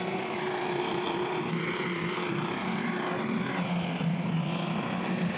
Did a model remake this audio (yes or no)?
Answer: no